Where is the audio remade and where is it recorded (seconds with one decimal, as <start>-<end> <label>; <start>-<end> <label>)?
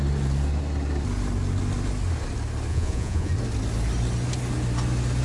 0.0-2.7 recorded; 2.7-3.3 remade; 3.3-5.2 recorded